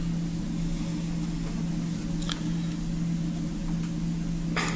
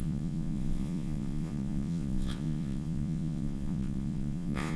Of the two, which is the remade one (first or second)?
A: second